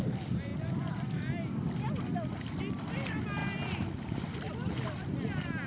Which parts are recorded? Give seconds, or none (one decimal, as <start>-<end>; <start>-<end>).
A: 0.0-5.7